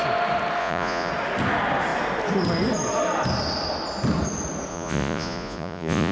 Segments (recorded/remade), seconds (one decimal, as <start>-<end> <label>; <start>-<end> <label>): 0.0-0.6 recorded; 0.6-1.1 remade; 1.1-4.7 recorded; 4.7-6.1 remade